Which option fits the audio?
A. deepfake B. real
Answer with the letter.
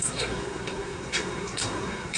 A